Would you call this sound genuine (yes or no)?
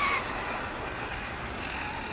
yes